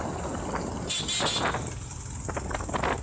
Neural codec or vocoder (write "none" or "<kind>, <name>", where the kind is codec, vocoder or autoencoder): none